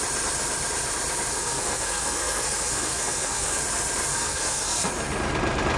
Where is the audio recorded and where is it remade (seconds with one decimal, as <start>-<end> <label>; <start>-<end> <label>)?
0.0-1.3 recorded; 1.3-3.6 remade; 3.6-4.1 recorded; 4.1-4.9 remade; 4.9-5.8 recorded